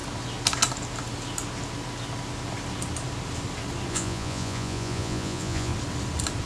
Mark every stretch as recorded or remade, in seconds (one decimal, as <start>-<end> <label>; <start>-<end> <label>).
0.0-3.9 recorded; 3.9-5.7 remade; 5.7-6.5 recorded